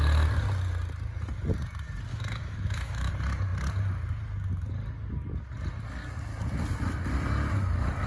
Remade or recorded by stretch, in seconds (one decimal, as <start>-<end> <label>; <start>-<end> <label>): 0.0-2.1 recorded; 2.1-3.1 remade; 3.1-8.1 recorded

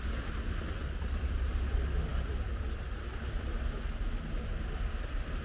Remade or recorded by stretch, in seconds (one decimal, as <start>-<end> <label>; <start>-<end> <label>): 0.0-5.4 recorded

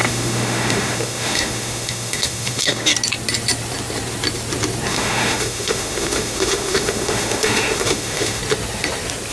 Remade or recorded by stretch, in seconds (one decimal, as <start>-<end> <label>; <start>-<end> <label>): 0.0-2.9 remade; 2.9-4.9 recorded; 4.9-8.4 remade; 8.4-9.3 recorded